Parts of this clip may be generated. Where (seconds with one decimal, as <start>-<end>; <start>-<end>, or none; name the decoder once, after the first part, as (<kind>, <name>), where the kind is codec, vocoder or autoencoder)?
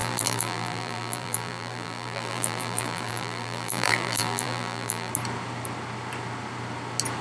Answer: 0.0-5.1 (vocoder, BigVGAN v2)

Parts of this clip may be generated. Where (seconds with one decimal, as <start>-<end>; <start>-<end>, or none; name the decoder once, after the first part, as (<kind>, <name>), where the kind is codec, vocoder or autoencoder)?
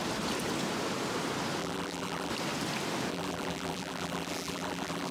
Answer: 1.6-2.3 (vocoder, BigVGAN v2); 3.1-5.1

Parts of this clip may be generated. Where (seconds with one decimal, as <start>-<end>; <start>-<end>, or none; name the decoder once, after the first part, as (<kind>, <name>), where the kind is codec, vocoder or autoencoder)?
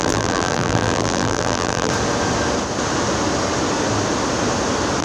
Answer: 0.0-1.9 (vocoder, BigVGAN v2)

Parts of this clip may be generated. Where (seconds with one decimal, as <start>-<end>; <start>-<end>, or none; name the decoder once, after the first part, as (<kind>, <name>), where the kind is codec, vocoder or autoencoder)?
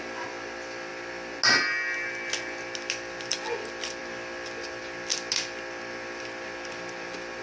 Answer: none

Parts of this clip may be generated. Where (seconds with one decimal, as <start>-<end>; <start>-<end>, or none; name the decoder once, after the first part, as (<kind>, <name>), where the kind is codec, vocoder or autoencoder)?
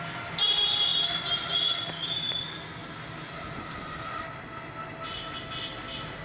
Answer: 2.8-4.2 (vocoder, BigVGAN v2)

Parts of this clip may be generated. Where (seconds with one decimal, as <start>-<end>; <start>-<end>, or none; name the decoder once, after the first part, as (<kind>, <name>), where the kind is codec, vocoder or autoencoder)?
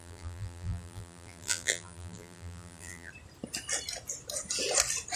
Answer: 0.0-3.1 (vocoder, BigVGAN v2)